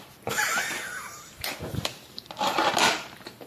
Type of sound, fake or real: fake